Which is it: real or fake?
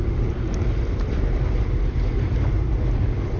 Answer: real